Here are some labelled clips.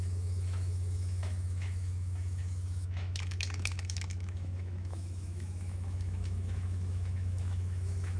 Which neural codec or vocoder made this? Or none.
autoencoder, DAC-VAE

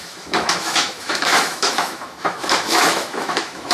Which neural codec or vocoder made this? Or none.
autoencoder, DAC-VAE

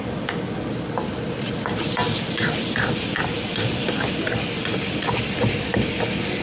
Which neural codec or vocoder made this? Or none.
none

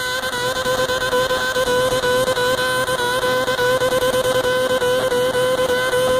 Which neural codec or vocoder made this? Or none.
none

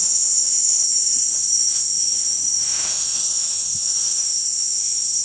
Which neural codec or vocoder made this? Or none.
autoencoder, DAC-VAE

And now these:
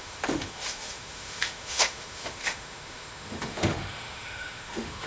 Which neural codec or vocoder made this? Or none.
autoencoder, DAC-VAE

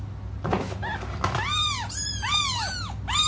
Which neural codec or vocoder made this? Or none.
none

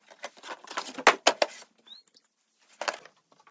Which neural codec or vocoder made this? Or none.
none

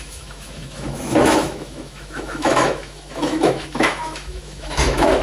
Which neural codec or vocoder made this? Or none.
autoencoder, DAC-VAE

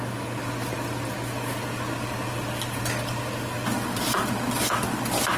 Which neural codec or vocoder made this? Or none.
none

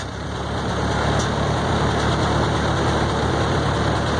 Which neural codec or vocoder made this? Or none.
none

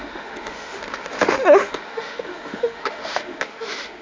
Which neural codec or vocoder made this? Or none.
autoencoder, DAC-VAE